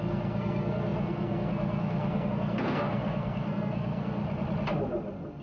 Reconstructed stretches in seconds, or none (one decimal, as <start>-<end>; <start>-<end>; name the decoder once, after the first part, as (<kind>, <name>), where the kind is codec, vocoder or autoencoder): 0.0-4.2 (codec, SNAC)